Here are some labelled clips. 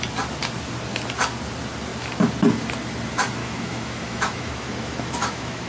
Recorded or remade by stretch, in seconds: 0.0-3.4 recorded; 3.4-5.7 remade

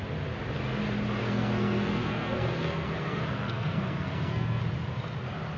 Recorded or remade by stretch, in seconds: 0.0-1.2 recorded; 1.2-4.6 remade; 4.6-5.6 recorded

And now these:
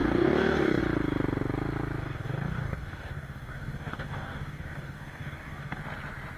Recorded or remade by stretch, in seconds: 0.0-0.8 remade; 0.8-2.0 recorded; 2.0-5.8 remade; 5.8-6.4 recorded